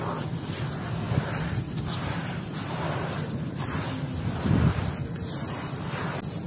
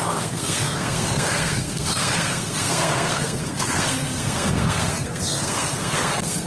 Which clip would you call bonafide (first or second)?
first